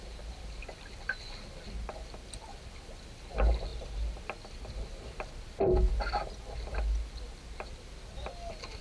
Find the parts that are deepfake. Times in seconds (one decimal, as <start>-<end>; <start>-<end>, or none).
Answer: none